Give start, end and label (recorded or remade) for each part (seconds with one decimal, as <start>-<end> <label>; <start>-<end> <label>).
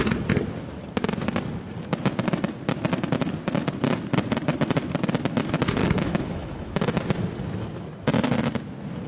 0.0-5.8 recorded; 5.8-7.0 remade; 7.0-9.1 recorded